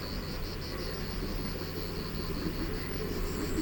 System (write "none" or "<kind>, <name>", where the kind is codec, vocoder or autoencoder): none